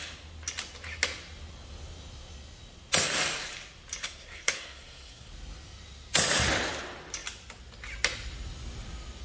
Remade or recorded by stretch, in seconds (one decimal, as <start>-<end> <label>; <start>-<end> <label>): 0.0-4.0 recorded; 4.0-5.3 remade; 5.3-9.2 recorded